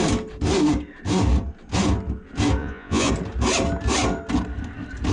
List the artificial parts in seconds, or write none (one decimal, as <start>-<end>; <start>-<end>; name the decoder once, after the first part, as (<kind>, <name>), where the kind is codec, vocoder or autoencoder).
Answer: 2.6-3.1 (vocoder, Vocos)